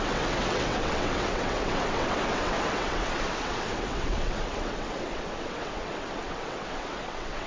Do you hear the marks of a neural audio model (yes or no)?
yes